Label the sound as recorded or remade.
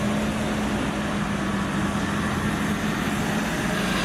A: recorded